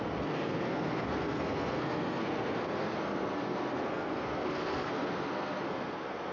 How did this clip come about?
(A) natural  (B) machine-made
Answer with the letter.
B